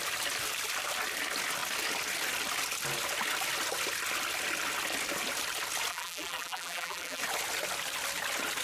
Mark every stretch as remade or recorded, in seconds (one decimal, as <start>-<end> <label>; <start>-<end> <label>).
0.0-5.9 recorded; 5.9-7.2 remade; 7.2-8.6 recorded